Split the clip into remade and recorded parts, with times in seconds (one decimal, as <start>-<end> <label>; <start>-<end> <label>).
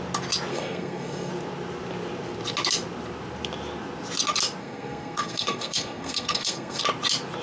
0.0-0.5 recorded; 0.5-1.3 remade; 1.3-4.6 recorded; 4.6-6.8 remade; 6.8-7.4 recorded